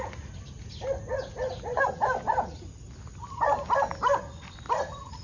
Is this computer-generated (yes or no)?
no